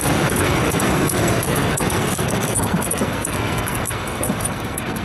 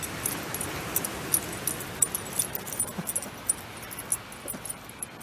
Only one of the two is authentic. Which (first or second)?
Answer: second